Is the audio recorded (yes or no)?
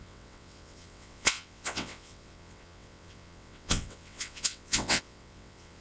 no